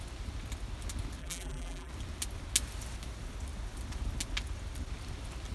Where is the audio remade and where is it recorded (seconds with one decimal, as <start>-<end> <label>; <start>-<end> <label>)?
0.0-1.2 recorded; 1.2-1.9 remade; 1.9-5.5 recorded